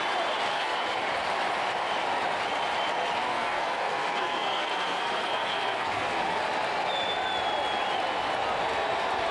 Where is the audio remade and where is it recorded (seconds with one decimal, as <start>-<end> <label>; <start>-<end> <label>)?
0.0-0.5 recorded; 0.5-1.0 remade; 1.0-3.2 recorded; 3.2-6.4 remade; 6.4-9.3 recorded